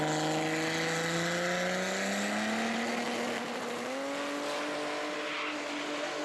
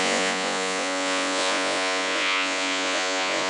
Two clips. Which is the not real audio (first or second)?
second